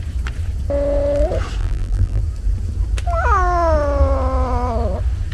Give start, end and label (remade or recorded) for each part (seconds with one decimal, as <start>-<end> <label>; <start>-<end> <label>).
0.0-1.6 recorded; 1.6-2.2 remade; 2.2-5.3 recorded